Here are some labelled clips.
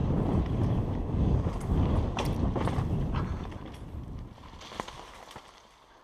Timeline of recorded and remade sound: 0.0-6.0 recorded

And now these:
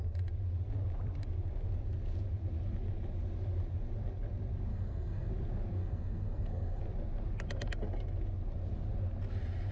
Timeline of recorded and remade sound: 0.0-4.7 recorded; 4.7-5.3 remade; 5.3-5.8 recorded; 5.8-6.8 remade; 6.8-9.7 recorded

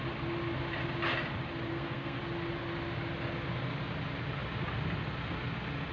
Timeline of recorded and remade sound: 0.0-1.7 recorded; 1.7-2.2 remade; 2.2-5.9 recorded